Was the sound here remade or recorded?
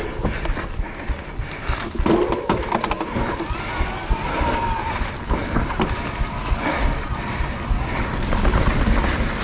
recorded